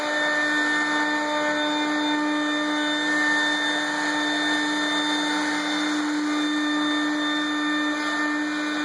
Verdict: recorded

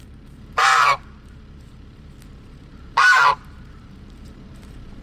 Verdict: remade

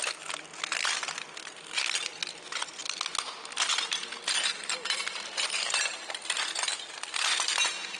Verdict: recorded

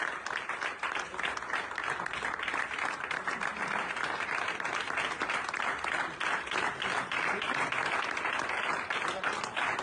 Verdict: remade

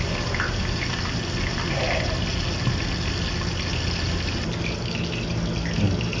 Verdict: recorded